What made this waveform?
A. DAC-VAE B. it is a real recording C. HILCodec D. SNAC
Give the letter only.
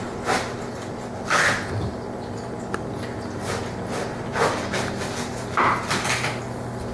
B